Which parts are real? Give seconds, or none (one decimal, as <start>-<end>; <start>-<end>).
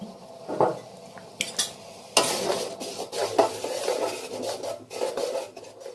0.0-5.9